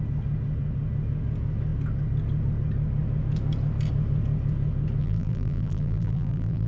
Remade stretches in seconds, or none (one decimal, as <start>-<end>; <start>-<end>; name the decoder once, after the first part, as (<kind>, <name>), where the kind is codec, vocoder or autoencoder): 5.0-6.7 (vocoder, BigVGAN v2)